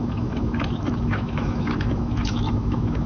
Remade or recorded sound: remade